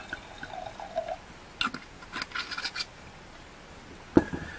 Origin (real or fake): real